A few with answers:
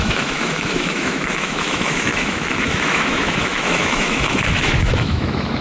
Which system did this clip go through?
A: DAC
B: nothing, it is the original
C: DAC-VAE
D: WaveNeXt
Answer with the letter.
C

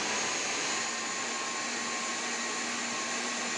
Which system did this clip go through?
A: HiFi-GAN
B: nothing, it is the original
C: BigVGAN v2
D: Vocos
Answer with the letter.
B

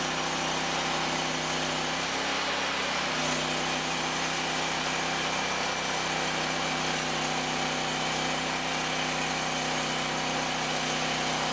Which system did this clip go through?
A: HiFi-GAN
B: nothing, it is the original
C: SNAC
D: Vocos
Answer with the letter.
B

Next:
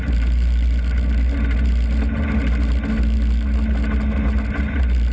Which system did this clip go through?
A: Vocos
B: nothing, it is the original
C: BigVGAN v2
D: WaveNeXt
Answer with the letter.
B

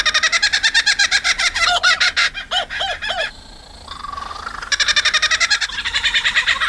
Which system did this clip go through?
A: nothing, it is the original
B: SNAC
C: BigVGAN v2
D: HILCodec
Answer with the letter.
A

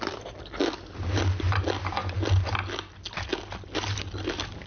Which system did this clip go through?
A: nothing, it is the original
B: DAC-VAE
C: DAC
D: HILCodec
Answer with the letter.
A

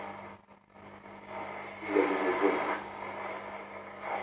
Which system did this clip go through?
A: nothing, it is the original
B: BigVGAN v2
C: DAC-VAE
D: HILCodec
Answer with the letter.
A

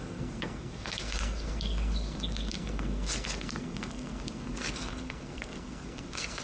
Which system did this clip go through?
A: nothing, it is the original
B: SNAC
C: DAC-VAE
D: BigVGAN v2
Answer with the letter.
B